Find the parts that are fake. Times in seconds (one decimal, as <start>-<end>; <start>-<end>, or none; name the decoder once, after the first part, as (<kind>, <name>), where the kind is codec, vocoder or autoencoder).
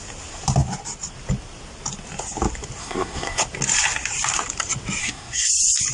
2.8-3.4 (codec, SNAC); 5.0-5.5